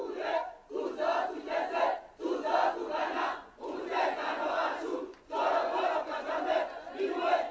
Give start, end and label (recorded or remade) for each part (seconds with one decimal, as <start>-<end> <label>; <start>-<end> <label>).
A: 0.0-0.6 remade; 0.6-2.2 recorded; 2.2-7.5 remade